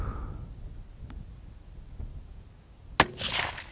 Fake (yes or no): no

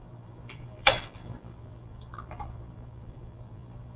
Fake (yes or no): yes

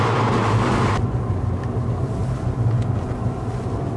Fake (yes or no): no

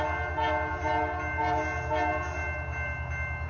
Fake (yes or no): no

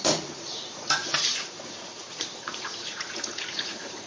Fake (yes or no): yes